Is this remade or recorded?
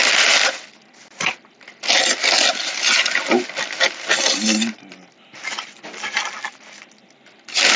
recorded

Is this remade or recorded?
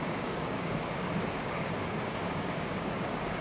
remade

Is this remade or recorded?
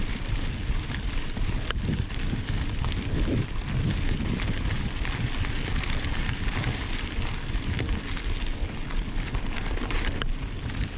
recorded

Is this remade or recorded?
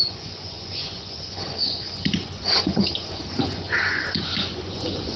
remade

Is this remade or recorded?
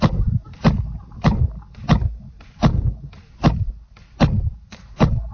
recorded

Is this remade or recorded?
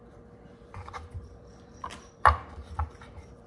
remade